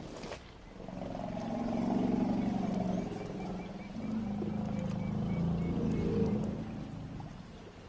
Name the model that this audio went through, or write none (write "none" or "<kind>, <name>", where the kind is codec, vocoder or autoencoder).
none